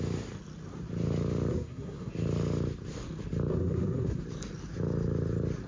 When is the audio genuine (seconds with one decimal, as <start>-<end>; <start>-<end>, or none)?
0.0-1.5; 2.1-3.5; 4.2-5.7